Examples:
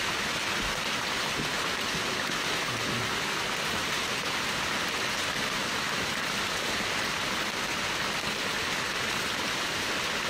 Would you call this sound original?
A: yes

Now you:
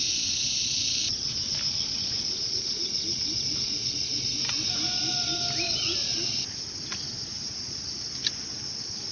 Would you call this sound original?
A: yes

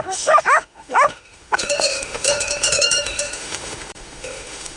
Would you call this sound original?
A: no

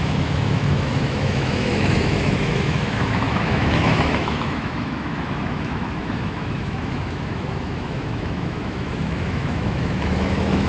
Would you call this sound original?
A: no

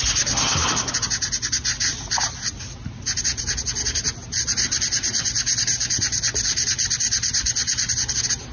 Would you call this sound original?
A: yes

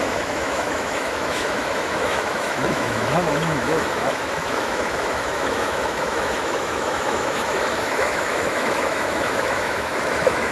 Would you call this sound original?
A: no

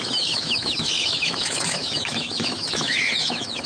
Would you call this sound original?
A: no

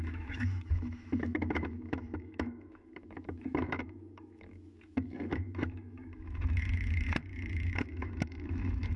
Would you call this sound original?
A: no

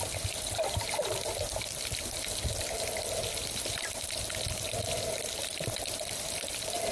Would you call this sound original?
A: yes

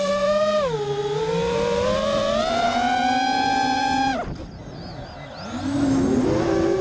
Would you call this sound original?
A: yes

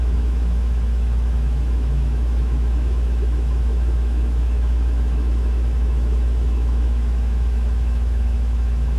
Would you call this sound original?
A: no